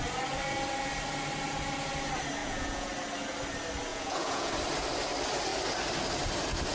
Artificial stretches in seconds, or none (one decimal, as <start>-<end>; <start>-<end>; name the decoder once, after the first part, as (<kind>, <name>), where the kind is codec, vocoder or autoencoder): 2.4-2.9 (vocoder, Vocos); 3.9-4.5